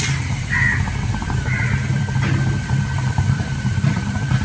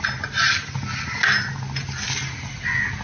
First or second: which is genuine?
second